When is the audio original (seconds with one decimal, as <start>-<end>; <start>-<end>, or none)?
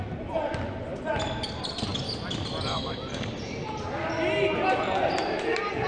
0.0-5.9